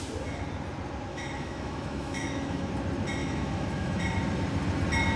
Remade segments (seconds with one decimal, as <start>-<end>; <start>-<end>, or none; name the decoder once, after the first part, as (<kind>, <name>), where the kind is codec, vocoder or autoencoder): 1.1-2.7 (autoencoder, DAC-VAE); 3.2-4.0